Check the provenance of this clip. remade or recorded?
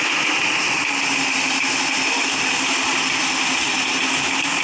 recorded